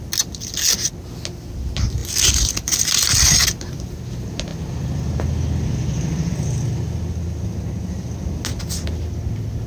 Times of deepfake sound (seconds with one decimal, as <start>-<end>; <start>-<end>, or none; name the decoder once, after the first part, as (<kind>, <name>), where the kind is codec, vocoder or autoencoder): none